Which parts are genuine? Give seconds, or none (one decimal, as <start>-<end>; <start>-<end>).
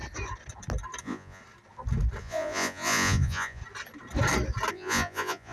0.0-1.0; 1.4-2.2; 3.6-4.7